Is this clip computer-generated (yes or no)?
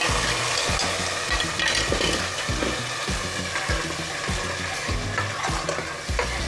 no